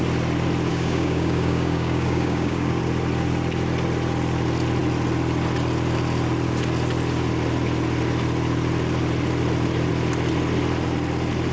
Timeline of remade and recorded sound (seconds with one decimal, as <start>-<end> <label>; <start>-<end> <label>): 0.0-0.7 recorded; 0.7-2.8 remade; 2.8-11.5 recorded